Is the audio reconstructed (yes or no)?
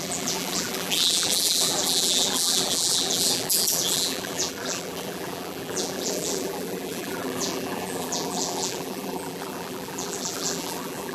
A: yes